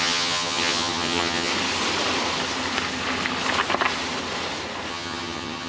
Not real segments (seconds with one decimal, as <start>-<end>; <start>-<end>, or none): 0.0-1.5; 4.9-5.7